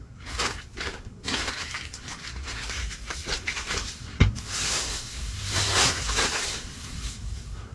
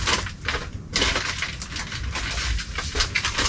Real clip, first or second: second